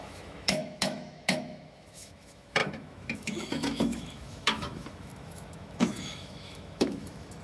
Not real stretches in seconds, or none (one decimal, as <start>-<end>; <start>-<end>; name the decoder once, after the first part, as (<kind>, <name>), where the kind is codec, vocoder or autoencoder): 0.0-7.4 (autoencoder, DAC-VAE)